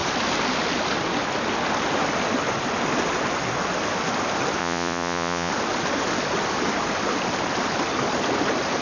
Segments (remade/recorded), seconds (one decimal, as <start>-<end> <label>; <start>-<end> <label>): 0.0-4.6 recorded; 4.6-5.5 remade; 5.5-8.8 recorded